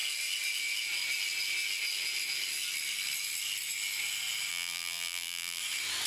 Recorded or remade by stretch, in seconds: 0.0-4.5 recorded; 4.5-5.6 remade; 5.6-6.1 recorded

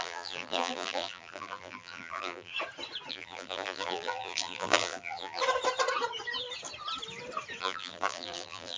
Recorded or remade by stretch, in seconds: 0.0-2.5 remade; 2.5-3.1 recorded; 3.1-5.4 remade; 5.4-7.6 recorded; 7.6-8.8 remade

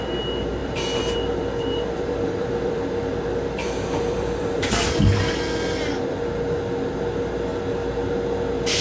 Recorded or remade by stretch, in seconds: 0.0-0.6 recorded; 0.6-5.0 remade; 5.0-8.8 recorded

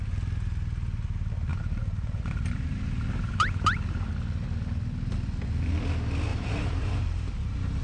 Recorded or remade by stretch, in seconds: 0.0-1.5 recorded; 1.5-4.1 remade; 4.1-6.3 recorded; 6.3-7.8 remade

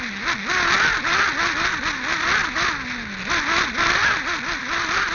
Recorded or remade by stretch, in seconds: 0.0-5.1 recorded

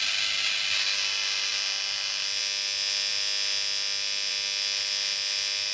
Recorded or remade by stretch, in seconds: 0.0-5.7 recorded

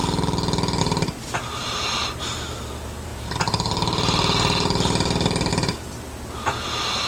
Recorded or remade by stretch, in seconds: 0.0-0.8 recorded; 0.8-7.1 remade

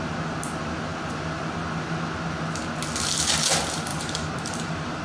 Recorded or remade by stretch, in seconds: 0.0-3.9 recorded; 3.9-5.0 remade